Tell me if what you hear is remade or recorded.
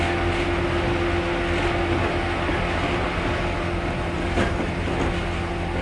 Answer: recorded